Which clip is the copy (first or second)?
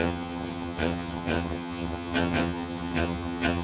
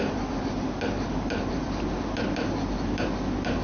first